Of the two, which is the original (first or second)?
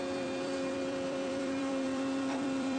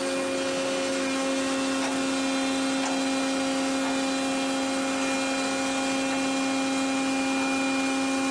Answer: second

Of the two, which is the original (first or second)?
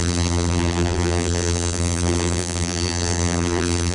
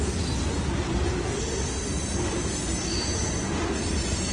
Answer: second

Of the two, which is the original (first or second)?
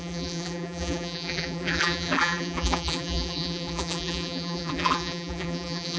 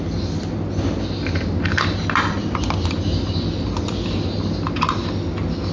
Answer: second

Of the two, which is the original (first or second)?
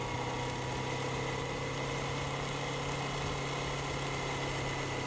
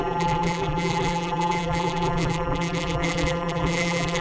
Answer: first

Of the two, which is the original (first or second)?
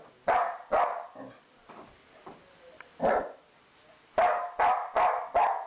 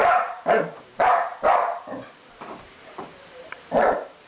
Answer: first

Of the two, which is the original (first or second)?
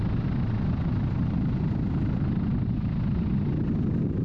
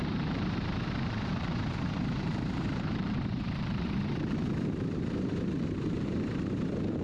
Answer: first